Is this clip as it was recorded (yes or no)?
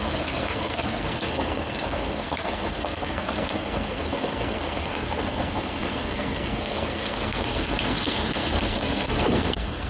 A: no